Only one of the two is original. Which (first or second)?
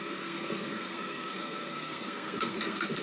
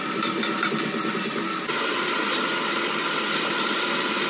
second